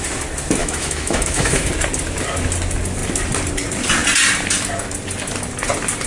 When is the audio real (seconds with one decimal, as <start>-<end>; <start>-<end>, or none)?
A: 0.0-0.6; 1.7-6.1